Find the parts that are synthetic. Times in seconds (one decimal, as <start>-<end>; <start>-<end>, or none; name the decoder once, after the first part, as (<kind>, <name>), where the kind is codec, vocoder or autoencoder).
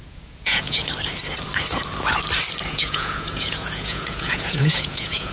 0.0-0.8 (vocoder, Vocos); 2.7-5.3